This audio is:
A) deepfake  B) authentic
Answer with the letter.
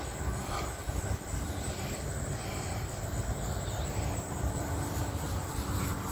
B